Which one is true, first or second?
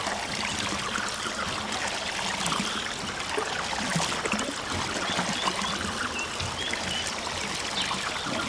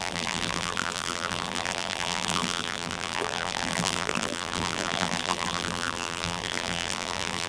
first